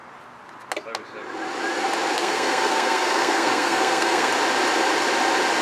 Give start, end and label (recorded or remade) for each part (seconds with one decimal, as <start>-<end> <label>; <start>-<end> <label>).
0.0-2.2 recorded; 2.2-4.3 remade; 4.3-5.6 recorded